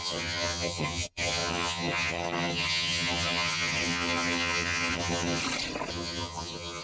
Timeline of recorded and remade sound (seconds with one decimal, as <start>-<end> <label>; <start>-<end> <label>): 0.0-5.4 remade; 5.4-5.9 recorded; 5.9-6.8 remade